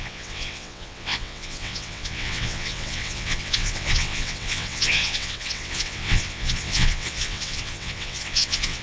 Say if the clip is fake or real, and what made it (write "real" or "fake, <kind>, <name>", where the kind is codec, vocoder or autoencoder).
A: fake, vocoder, WaveNeXt